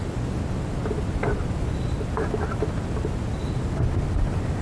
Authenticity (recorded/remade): recorded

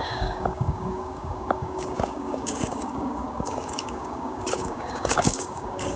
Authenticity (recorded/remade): remade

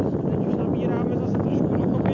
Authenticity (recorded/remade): recorded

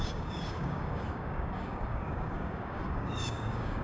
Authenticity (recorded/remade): remade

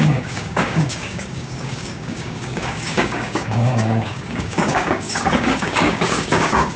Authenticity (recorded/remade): remade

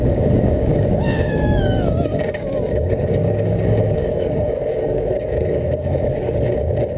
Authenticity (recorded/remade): remade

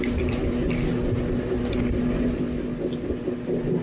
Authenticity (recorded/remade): recorded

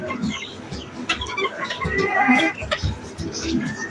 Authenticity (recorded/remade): remade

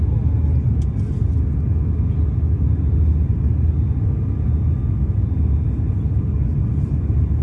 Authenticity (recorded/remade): recorded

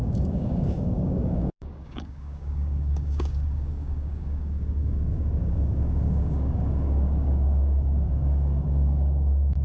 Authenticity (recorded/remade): remade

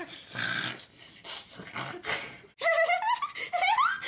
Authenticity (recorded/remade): recorded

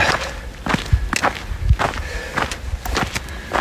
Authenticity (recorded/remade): recorded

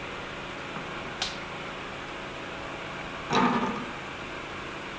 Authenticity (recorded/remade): recorded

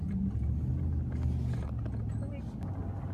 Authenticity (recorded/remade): recorded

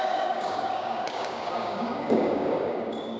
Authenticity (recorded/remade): remade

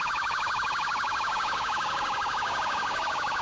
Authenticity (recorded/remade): remade